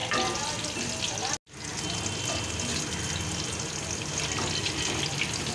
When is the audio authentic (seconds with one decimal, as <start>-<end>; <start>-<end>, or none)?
0.0-5.5